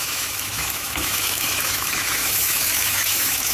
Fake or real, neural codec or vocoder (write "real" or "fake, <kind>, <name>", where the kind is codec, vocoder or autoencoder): fake, autoencoder, DAC-VAE